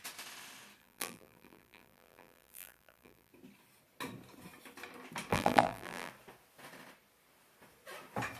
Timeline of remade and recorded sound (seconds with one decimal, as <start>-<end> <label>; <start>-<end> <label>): 0.0-0.8 recorded; 0.8-3.3 remade; 3.3-5.3 recorded; 5.3-6.1 remade; 6.1-8.4 recorded